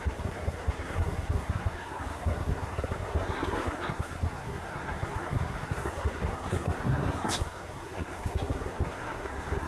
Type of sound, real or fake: fake